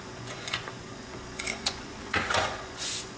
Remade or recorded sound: remade